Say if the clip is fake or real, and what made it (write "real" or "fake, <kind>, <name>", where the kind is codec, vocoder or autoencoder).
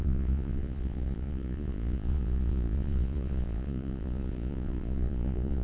fake, vocoder, Vocos